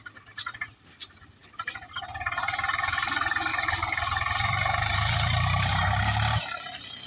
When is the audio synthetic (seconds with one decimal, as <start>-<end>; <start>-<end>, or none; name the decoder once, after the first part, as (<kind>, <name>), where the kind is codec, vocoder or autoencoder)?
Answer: 3.5-6.0 (vocoder, BigVGAN v2)